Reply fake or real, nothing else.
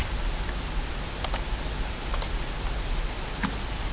real